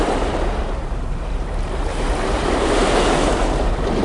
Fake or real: fake